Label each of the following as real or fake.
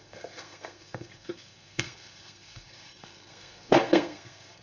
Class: fake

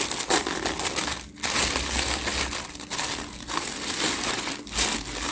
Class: real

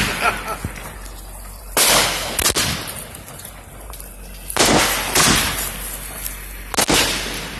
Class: real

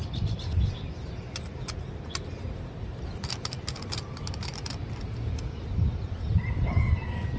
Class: real